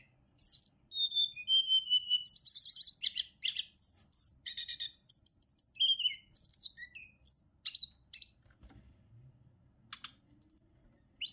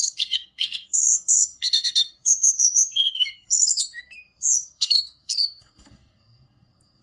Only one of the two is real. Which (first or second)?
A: first